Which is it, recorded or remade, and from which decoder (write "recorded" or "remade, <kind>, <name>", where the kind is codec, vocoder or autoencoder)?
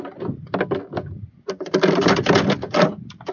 recorded